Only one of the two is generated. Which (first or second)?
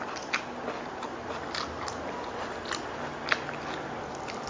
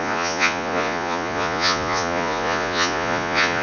second